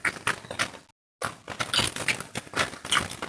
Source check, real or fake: real